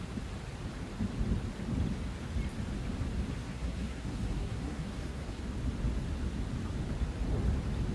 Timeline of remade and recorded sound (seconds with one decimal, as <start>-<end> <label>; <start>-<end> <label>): 0.0-3.3 recorded; 3.3-5.4 remade; 5.4-7.9 recorded